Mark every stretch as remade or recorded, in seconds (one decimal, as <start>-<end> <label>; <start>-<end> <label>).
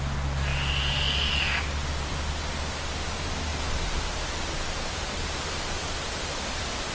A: 0.0-3.5 recorded; 3.5-4.0 remade; 4.0-6.9 recorded